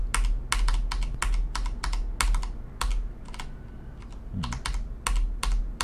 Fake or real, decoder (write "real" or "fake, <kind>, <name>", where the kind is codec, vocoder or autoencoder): real